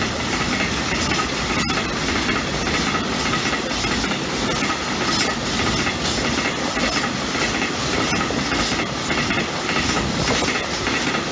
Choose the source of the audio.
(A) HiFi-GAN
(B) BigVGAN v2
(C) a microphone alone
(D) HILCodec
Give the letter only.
C